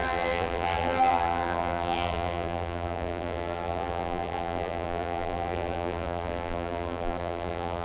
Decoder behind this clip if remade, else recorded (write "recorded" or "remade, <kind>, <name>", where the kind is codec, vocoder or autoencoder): remade, vocoder, BigVGAN v2